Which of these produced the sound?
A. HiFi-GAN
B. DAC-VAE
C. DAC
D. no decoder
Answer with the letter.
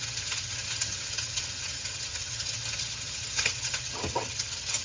A